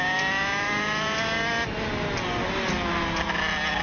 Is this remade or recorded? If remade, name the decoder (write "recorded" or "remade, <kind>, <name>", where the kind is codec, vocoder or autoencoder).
recorded